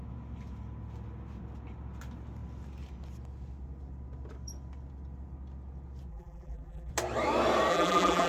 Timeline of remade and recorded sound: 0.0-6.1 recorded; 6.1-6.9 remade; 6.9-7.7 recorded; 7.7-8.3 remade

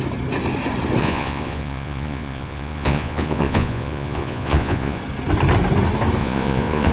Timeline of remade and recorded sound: 0.0-1.0 recorded; 1.0-5.0 remade; 5.0-6.2 recorded; 6.2-6.9 remade

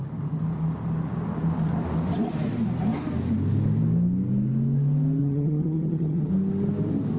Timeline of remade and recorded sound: 0.0-5.2 recorded; 5.2-6.3 remade; 6.3-7.2 recorded

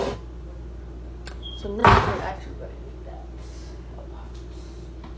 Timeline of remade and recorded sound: 0.0-5.2 recorded

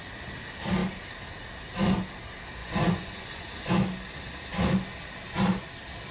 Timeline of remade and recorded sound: 0.0-2.6 recorded; 2.6-3.7 remade; 3.7-6.1 recorded

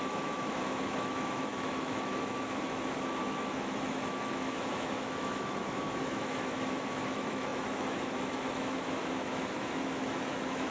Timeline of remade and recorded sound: 0.0-10.7 remade

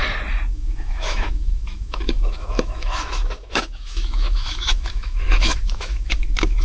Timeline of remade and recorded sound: 0.0-0.5 recorded; 0.5-6.6 remade